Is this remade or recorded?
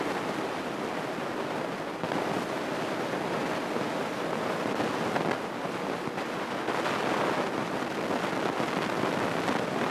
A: recorded